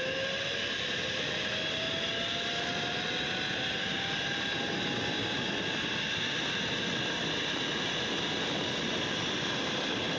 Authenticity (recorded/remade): recorded